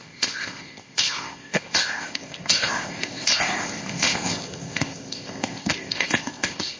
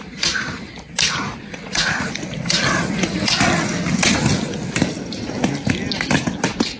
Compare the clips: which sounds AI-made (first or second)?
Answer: first